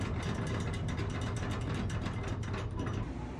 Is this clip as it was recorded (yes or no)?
yes